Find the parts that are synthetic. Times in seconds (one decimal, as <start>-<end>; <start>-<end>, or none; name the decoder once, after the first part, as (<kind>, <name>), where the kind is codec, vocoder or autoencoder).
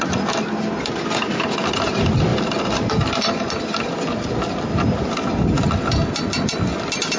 none